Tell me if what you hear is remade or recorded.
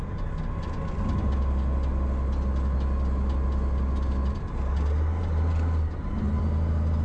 recorded